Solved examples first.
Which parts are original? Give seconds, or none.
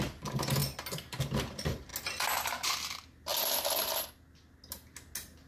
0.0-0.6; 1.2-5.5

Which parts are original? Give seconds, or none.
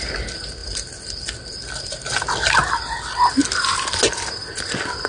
0.0-0.6; 2.1-5.1